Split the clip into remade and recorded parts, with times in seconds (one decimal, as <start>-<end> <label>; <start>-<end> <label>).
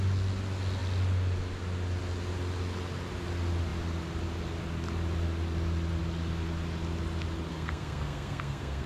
0.0-7.5 recorded; 7.5-8.9 remade